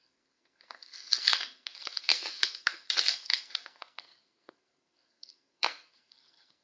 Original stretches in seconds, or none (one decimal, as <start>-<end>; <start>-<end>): none